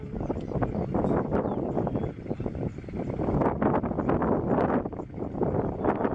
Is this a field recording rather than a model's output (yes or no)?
yes